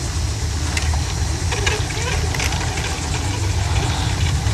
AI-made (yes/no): no